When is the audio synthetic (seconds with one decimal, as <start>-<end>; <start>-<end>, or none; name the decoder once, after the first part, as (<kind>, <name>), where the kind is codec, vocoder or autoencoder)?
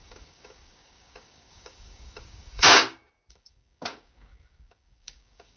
0.0-2.8 (codec, DAC); 3.3-5.6